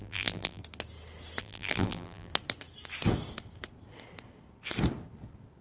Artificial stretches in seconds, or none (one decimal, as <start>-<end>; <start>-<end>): 0.0-0.6; 1.4-2.3